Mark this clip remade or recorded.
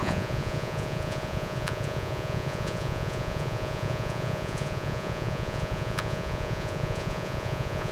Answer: remade